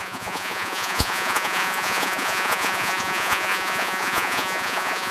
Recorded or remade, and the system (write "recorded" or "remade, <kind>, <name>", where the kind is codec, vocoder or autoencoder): remade, vocoder, Vocos